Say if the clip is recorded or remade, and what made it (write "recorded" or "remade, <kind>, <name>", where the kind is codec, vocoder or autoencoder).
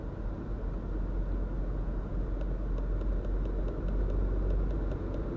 recorded